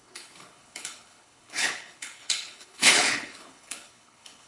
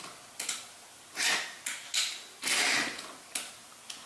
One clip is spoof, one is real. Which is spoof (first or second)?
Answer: first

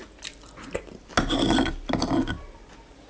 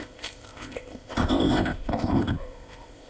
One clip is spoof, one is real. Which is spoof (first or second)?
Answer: second